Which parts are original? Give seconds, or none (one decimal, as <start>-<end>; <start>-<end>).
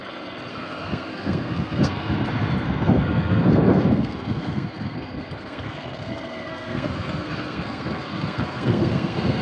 0.0-0.5